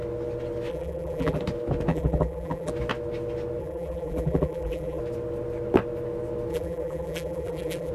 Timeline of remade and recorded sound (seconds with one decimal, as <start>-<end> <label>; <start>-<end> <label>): 0.0-0.7 recorded; 0.7-1.4 remade; 1.4-1.9 recorded; 1.9-2.7 remade; 2.7-3.6 recorded; 3.6-5.0 remade; 5.0-6.5 recorded; 6.5-7.9 remade